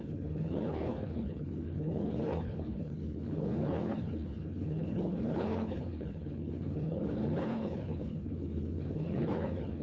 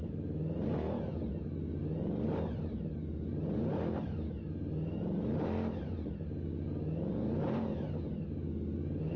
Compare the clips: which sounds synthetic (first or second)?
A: first